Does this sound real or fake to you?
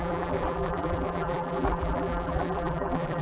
fake